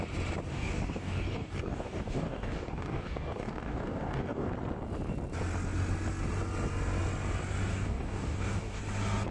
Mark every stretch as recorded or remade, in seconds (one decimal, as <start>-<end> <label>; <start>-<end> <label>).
0.0-0.5 recorded; 0.5-4.5 remade; 4.5-7.7 recorded; 7.7-8.8 remade; 8.8-9.3 recorded